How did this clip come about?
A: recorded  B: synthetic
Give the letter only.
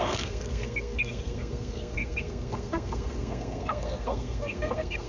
B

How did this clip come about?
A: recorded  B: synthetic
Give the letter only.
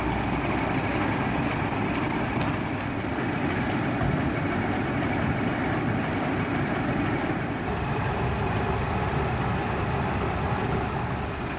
A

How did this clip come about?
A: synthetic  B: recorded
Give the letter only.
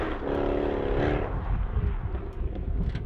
B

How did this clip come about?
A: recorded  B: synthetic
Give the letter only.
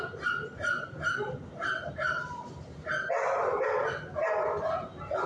A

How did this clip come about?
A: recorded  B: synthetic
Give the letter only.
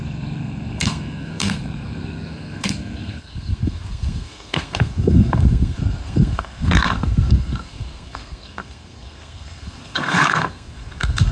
B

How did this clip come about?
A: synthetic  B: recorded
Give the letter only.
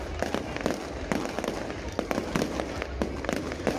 B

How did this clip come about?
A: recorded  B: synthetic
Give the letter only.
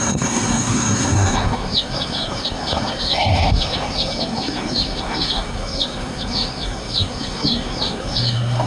B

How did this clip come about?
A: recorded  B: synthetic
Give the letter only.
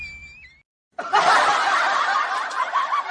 A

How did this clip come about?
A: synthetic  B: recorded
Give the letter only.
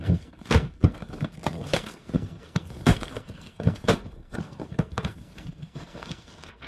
A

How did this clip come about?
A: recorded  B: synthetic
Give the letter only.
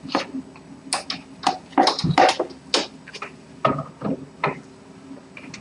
A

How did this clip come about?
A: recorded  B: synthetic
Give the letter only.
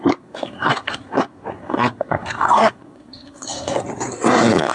B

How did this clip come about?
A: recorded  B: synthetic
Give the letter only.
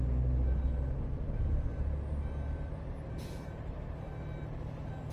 A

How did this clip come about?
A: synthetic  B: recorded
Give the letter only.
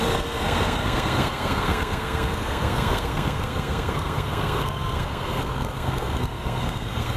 A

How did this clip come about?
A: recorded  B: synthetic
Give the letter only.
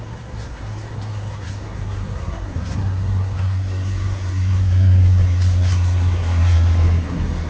B